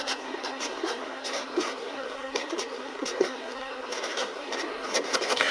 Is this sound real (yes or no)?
no